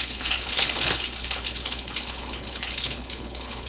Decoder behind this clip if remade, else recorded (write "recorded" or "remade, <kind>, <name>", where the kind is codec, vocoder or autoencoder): remade, codec, HILCodec